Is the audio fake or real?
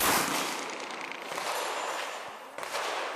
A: real